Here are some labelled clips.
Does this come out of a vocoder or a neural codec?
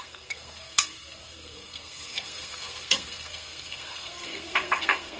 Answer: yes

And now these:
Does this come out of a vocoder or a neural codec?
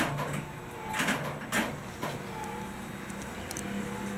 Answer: no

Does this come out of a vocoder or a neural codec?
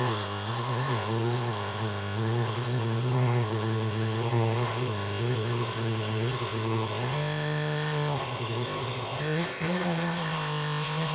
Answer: yes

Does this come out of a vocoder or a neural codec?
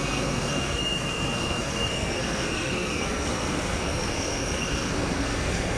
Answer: yes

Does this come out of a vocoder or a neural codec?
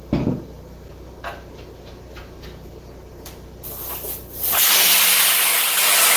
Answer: no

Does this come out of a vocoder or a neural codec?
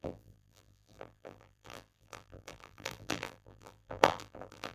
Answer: yes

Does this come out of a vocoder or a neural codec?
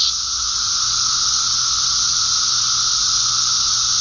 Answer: no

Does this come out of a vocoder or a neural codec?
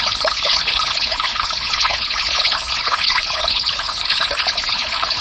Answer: yes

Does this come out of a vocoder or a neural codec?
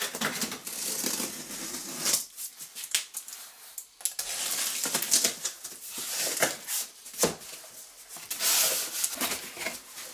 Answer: no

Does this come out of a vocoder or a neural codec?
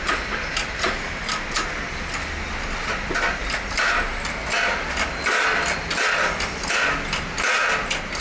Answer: no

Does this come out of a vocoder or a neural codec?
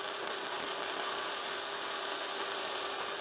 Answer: no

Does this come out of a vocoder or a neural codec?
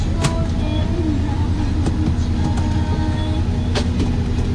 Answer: no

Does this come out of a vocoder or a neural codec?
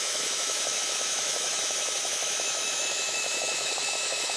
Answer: yes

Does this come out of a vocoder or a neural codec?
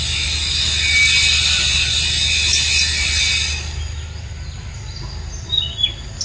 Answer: no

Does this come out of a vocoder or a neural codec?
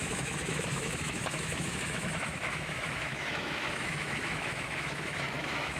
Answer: yes